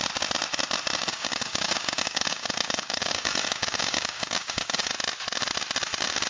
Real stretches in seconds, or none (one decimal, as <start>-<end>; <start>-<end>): 0.0-1.1; 4.9-6.3

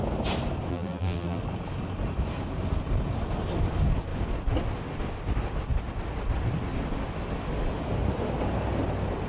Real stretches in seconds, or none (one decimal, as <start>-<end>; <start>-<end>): 0.0-0.7; 1.4-9.3

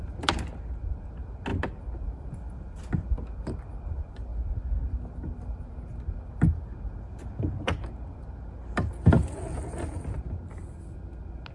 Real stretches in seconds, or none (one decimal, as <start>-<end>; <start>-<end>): 0.0-11.5

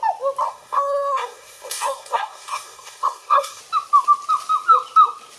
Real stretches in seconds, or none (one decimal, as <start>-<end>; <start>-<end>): 0.0-0.4; 3.6-5.4

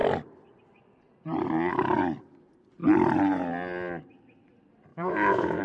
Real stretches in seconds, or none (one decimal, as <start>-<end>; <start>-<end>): 0.0-4.9

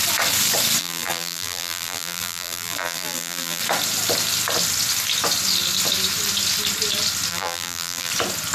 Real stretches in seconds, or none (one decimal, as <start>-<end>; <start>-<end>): 0.0-0.8; 3.6-7.3; 8.1-8.5

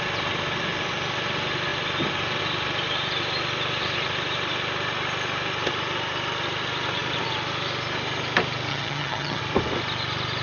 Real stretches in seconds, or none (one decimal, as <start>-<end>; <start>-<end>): 0.0-8.7; 9.4-10.4

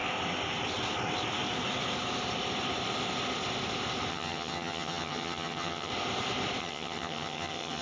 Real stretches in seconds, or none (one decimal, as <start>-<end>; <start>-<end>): 0.0-4.1; 5.9-6.6